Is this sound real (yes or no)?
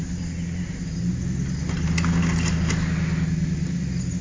yes